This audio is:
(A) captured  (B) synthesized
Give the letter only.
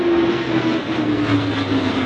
B